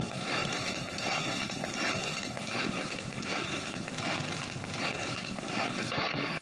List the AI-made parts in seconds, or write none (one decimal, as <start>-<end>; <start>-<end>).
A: 0.0-3.9; 4.8-6.4

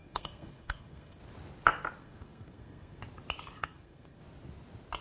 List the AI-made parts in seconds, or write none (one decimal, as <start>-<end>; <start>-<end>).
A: 0.0-1.2; 2.0-3.0; 3.6-4.2

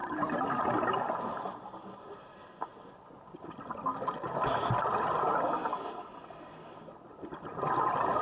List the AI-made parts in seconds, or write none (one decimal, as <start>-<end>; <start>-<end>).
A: none

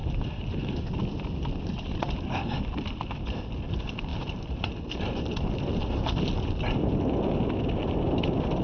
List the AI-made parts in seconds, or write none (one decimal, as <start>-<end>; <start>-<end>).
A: none

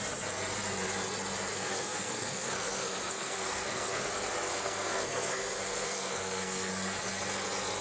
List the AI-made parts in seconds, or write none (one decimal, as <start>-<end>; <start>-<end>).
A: 1.5-4.1; 4.5-6.7

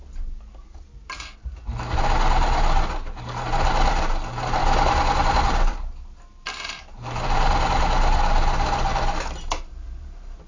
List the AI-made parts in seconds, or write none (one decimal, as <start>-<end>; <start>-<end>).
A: none

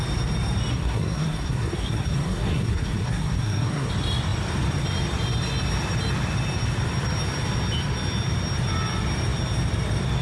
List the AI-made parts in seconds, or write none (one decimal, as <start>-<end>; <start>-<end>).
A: 0.7-3.9

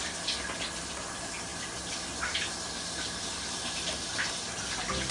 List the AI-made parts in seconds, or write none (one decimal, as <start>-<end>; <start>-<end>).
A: none